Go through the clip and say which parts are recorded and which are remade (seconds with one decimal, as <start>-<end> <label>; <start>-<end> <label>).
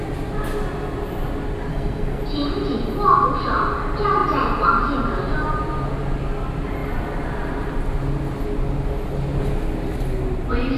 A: 0.0-1.7 recorded; 1.7-2.2 remade; 2.2-10.8 recorded